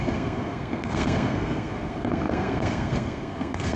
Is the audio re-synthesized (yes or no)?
yes